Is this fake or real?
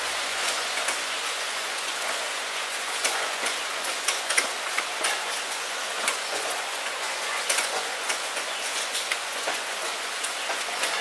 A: fake